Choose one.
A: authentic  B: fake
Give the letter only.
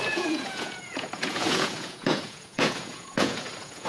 B